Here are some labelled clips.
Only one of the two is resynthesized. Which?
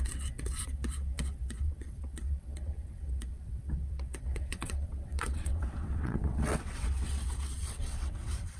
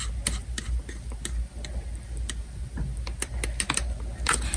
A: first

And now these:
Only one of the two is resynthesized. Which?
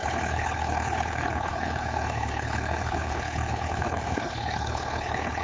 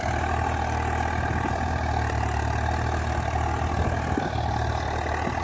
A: first